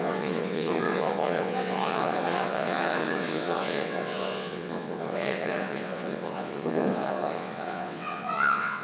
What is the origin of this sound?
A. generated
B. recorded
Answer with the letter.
A